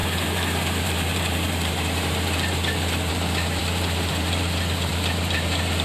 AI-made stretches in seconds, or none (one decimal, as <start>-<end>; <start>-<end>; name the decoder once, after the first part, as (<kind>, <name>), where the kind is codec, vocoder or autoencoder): 0.0-5.8 (vocoder, BigVGAN v2)